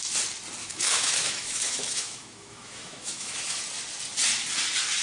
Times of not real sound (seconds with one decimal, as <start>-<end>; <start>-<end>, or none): 0.6-3.6